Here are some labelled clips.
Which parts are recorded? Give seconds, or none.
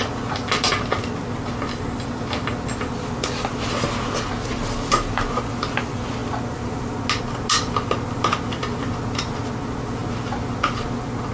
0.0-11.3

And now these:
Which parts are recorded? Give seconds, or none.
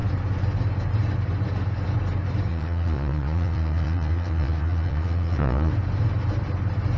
0.0-2.5; 5.7-7.0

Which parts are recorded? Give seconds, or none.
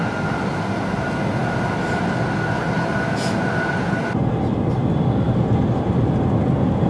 0.0-6.9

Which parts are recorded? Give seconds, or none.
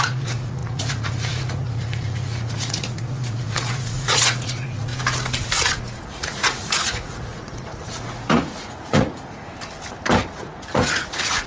4.9-5.8; 9.5-10.4